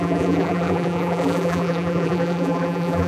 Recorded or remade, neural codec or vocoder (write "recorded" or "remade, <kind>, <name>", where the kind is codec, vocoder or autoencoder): remade, vocoder, BigVGAN v2